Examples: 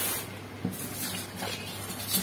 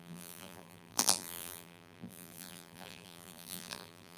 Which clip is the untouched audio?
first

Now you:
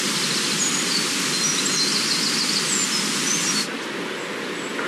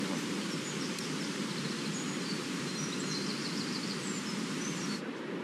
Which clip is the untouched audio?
first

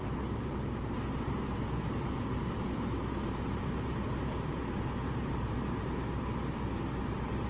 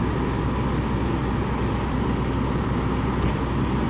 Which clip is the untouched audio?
second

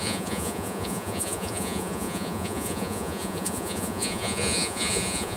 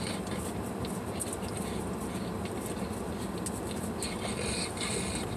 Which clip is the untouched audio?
second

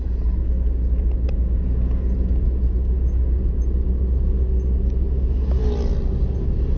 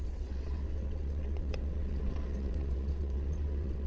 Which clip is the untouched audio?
first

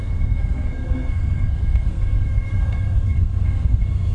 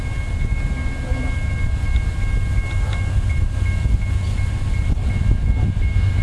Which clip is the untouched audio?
second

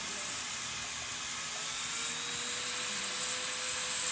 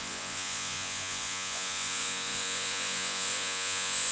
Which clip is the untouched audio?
first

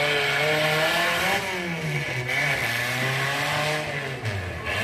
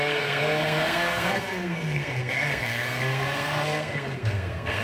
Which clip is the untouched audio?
first